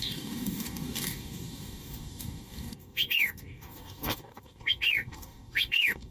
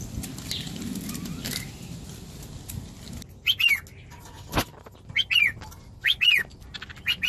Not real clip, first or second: first